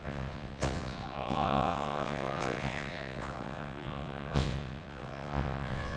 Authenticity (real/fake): fake